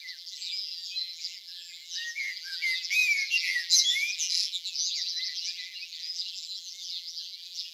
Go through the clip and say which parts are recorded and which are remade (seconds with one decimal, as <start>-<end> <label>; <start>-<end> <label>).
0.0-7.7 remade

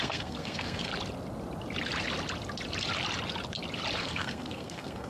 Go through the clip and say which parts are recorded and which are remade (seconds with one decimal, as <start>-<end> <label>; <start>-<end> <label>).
0.0-0.9 remade; 0.9-4.0 recorded; 4.0-5.1 remade

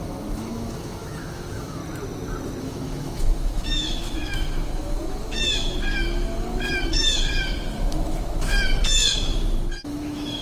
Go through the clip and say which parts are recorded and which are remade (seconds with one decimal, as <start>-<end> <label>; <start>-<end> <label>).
0.0-1.8 remade; 1.8-2.6 recorded; 2.6-10.4 remade

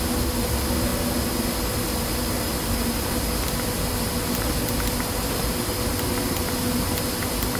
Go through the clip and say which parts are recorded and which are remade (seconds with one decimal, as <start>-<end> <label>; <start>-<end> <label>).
0.0-7.6 recorded

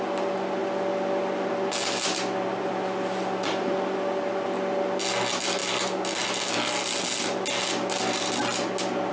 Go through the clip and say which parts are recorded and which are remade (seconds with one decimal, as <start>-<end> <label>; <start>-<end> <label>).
0.0-9.1 recorded

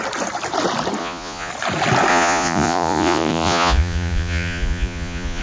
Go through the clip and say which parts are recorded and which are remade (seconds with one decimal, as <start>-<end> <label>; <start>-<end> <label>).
0.0-1.0 recorded; 1.0-1.5 remade; 1.5-2.1 recorded; 2.1-5.4 remade